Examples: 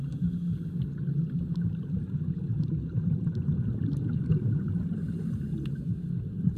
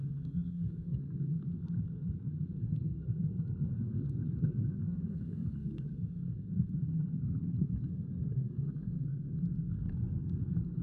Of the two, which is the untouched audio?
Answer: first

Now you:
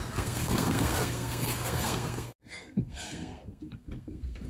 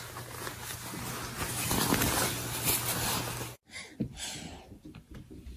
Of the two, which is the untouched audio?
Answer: second